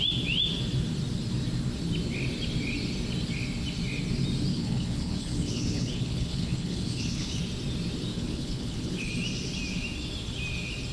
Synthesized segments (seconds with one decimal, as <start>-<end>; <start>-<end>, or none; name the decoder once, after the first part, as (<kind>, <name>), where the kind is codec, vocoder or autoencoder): 4.5-7.4 (codec, HILCodec); 8.1-9.1